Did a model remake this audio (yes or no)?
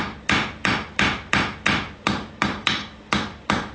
yes